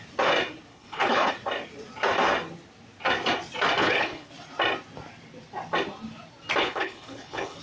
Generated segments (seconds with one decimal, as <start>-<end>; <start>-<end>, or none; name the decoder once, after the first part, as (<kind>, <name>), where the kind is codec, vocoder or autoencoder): 0.7-1.3 (codec, HILCodec); 3.8-4.3; 6.6-7.6